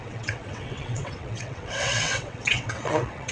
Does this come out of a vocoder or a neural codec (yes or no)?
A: yes